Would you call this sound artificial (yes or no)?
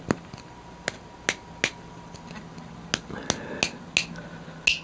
no